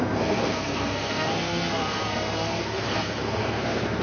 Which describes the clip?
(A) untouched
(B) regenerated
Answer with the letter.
B